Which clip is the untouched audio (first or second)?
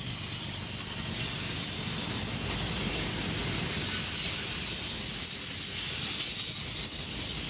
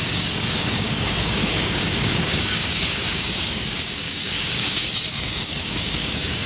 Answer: first